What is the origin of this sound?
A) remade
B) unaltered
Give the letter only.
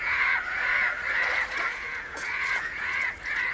A